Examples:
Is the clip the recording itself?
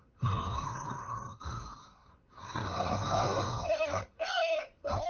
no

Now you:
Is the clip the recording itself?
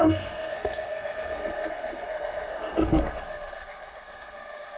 no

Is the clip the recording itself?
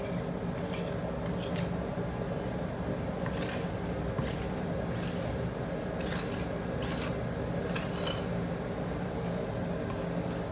yes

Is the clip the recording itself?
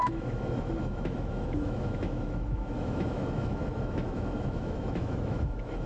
no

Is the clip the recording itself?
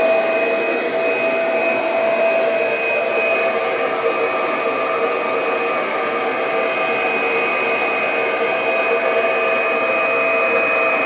yes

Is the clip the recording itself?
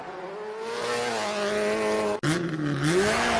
yes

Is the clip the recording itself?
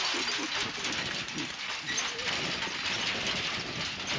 yes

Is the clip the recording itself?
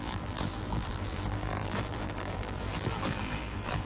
no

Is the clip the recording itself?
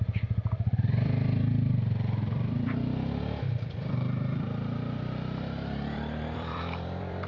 no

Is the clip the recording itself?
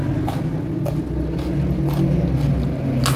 yes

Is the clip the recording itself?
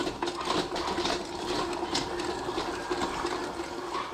yes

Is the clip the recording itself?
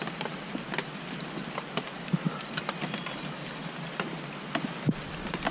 yes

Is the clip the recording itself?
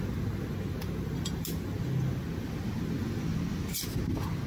yes